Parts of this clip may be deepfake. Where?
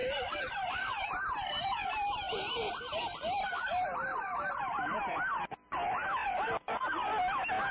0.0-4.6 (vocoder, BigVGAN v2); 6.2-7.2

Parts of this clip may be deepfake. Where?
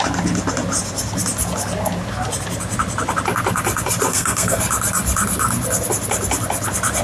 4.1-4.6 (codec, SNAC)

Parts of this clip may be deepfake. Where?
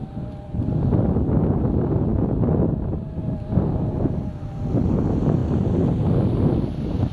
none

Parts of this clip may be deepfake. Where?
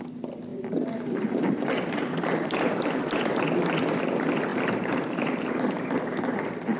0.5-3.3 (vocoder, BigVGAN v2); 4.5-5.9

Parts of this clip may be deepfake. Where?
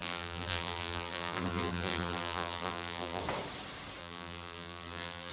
0.0-3.2 (vocoder, BigVGAN v2); 4.0-5.3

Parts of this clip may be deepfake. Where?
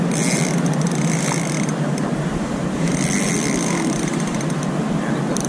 1.9-2.9 (vocoder, BigVGAN v2)